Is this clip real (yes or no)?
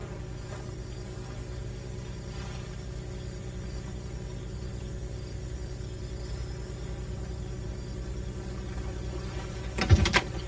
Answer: yes